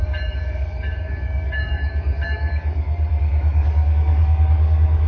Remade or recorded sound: remade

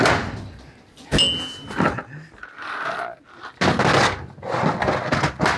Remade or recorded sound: recorded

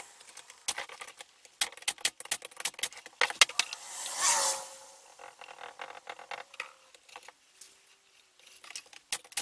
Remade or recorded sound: recorded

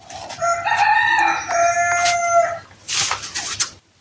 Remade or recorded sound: recorded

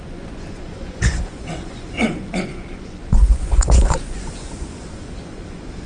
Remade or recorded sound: remade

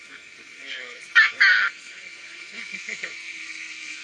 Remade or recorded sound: remade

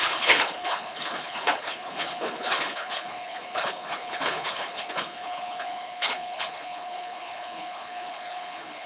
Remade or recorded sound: remade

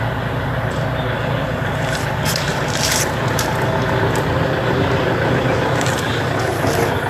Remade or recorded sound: remade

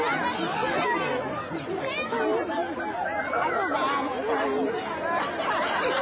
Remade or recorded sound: recorded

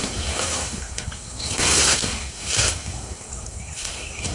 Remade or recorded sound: remade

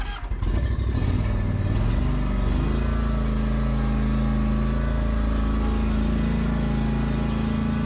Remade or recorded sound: recorded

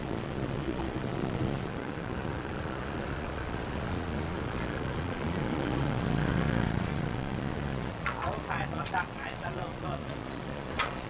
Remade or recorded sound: remade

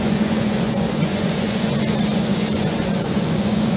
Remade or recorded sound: remade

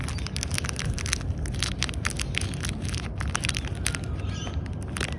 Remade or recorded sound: recorded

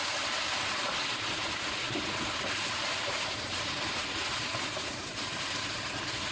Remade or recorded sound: recorded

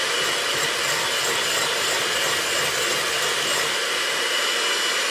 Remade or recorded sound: recorded